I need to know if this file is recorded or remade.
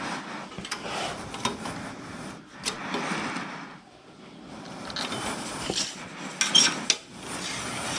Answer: recorded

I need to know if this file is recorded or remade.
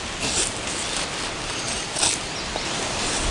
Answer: recorded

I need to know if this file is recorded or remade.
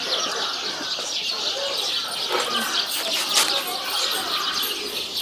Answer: recorded